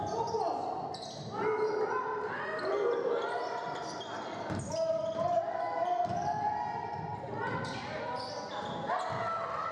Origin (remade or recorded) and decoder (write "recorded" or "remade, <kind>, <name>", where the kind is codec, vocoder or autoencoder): recorded